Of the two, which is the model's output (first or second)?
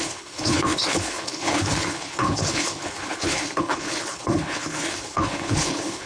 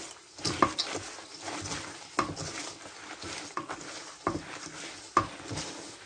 first